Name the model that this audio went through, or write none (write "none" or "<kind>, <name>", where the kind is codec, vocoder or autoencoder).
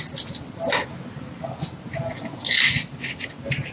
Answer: none